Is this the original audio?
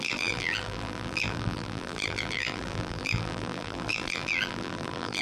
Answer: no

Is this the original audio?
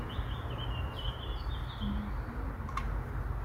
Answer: yes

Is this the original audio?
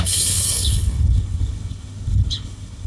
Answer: no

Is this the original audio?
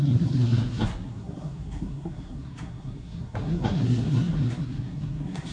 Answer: no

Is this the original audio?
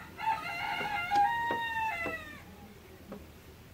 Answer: yes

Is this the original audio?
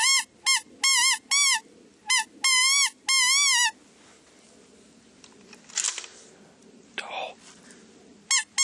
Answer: yes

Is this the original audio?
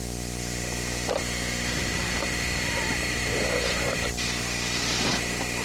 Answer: no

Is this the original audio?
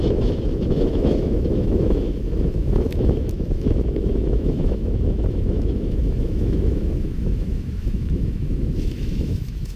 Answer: no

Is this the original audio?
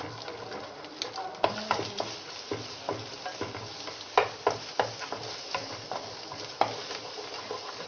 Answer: yes